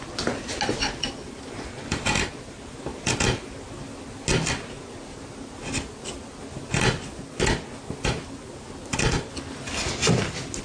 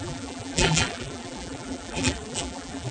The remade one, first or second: second